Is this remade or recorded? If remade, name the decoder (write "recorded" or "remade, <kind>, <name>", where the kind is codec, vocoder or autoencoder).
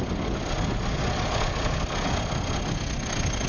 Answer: recorded